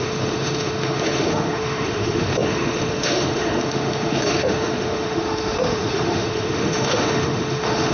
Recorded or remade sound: remade